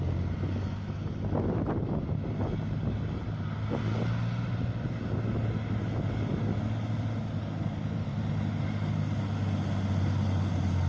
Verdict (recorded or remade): recorded